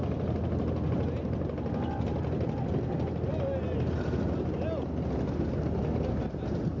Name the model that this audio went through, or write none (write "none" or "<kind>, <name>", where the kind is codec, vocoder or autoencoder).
none